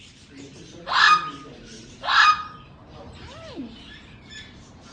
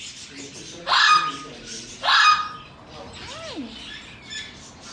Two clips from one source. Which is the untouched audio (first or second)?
second